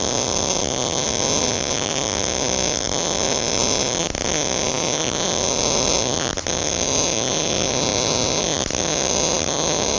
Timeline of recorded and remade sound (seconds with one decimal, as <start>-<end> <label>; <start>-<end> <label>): 0.0-10.0 recorded